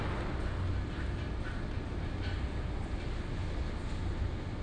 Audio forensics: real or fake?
real